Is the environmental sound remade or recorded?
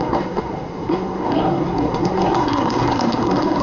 remade